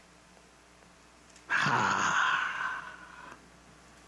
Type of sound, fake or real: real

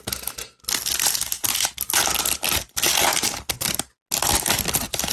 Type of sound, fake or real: real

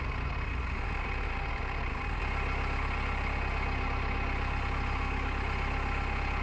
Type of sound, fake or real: real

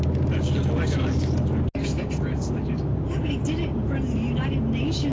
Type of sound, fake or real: real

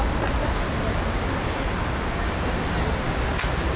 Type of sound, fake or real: real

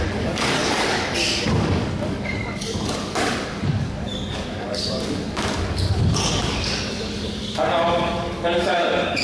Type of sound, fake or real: fake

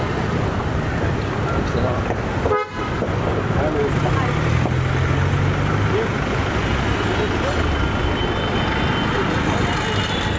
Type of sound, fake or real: real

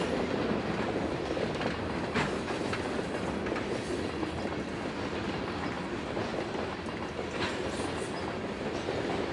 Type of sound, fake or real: real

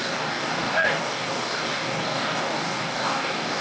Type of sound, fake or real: fake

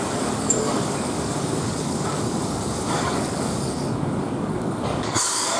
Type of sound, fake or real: fake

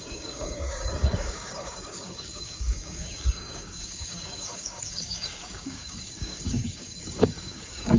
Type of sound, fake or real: fake